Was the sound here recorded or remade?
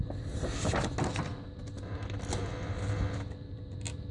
recorded